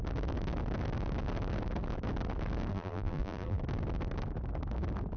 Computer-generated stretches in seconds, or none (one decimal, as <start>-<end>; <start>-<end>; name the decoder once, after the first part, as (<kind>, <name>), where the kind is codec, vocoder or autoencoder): 2.7-3.6 (vocoder, BigVGAN v2)